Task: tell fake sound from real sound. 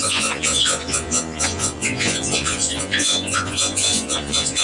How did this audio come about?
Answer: fake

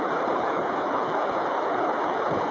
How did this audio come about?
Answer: fake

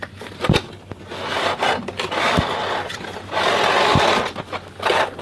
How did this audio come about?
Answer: real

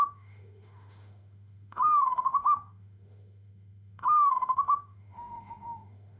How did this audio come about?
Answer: fake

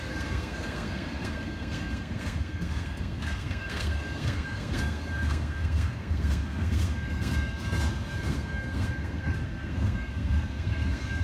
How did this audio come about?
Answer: fake